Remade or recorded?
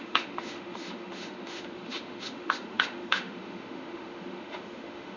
remade